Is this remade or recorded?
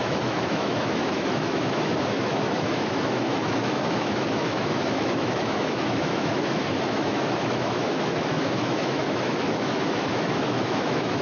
remade